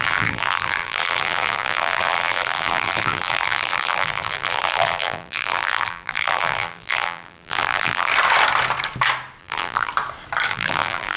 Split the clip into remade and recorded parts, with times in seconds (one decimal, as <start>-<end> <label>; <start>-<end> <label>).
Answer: 0.0-8.1 remade; 8.1-9.4 recorded; 9.4-9.9 remade; 9.9-10.5 recorded; 10.5-11.2 remade